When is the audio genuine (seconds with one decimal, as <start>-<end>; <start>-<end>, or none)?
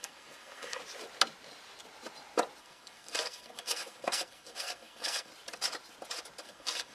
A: 0.8-2.6; 5.3-6.4